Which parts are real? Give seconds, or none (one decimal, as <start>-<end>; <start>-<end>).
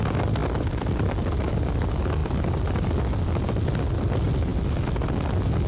0.0-5.7